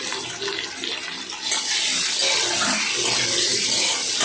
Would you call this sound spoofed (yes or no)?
no